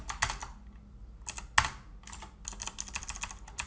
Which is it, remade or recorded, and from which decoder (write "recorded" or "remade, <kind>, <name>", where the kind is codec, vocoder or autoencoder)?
recorded